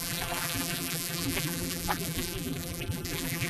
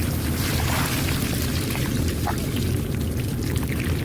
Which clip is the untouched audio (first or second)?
second